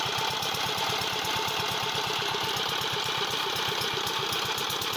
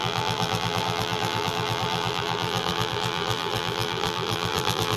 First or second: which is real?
first